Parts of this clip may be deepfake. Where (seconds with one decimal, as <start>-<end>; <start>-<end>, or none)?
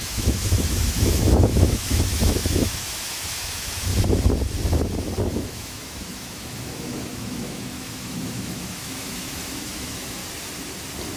0.0-3.9; 5.3-10.2